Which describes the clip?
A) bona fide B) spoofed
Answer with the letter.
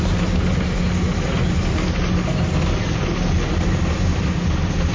A